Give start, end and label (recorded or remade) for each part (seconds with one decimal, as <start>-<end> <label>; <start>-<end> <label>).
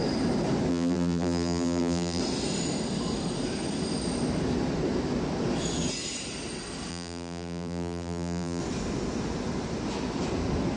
0.0-0.7 recorded; 0.7-2.2 remade; 2.2-6.9 recorded; 6.9-8.6 remade; 8.6-10.8 recorded